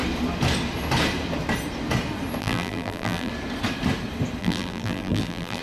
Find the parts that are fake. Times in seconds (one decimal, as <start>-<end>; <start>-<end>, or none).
2.4-3.3; 4.4-5.6